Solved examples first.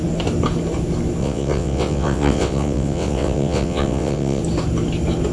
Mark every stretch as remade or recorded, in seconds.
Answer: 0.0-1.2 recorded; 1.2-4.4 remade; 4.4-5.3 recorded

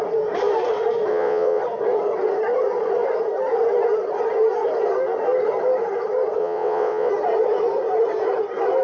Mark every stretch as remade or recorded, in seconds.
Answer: 0.0-1.1 recorded; 1.1-1.6 remade; 1.6-6.4 recorded; 6.4-7.1 remade; 7.1-8.8 recorded

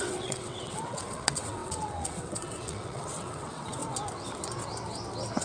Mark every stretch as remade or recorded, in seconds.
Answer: 0.0-3.8 remade; 3.8-5.4 recorded